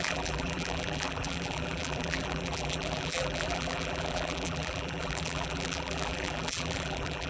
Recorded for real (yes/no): no